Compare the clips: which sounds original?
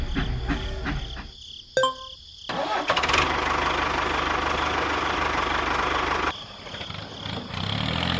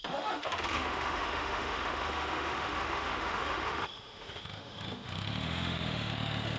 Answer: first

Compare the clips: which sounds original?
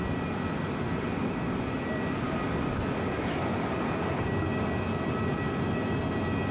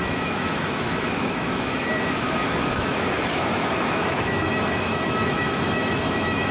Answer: first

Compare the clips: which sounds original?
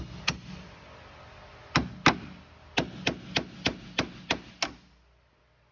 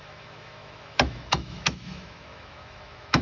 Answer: first